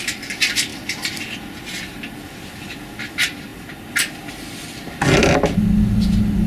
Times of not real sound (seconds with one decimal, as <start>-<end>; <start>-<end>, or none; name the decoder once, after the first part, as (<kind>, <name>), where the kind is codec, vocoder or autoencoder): none